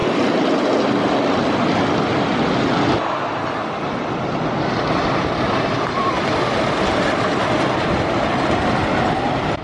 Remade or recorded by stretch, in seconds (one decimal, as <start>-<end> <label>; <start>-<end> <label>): 0.0-9.6 recorded